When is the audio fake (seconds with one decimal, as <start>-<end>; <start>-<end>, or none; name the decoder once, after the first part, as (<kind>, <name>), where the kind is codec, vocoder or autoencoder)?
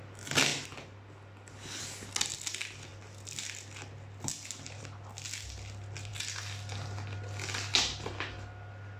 none